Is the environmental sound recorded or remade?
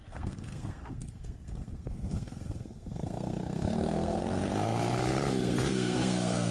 remade